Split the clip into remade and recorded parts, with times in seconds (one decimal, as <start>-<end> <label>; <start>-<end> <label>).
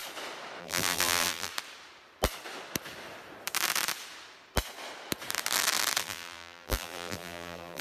0.0-0.6 recorded; 0.6-1.5 remade; 1.5-6.0 recorded; 6.0-7.8 remade